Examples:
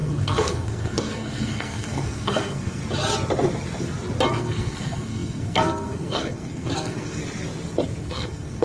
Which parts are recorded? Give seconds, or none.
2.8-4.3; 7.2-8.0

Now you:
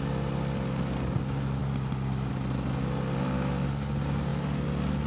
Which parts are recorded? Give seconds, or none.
0.0-5.1